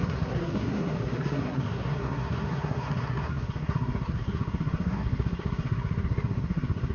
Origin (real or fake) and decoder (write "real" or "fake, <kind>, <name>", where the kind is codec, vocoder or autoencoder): fake, codec, SNAC